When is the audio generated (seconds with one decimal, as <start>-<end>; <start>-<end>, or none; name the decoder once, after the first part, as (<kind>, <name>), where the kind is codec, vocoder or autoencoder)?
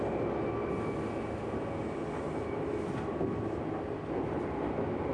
none